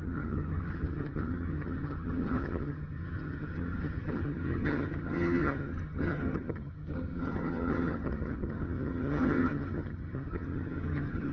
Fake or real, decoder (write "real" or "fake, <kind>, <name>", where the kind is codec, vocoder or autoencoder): fake, vocoder, HiFi-GAN